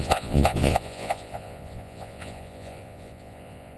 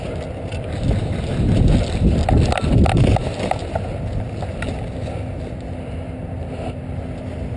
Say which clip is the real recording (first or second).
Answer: second